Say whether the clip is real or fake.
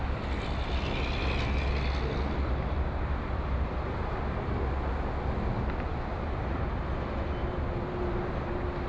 real